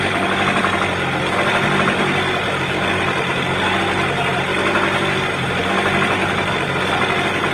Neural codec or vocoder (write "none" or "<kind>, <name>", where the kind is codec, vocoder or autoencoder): none